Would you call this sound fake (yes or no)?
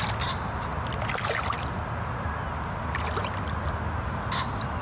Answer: no